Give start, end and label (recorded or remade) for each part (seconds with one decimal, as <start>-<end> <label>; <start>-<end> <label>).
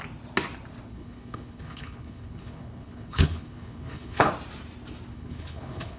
0.0-0.9 recorded; 0.9-4.3 remade; 4.3-5.1 recorded; 5.1-6.0 remade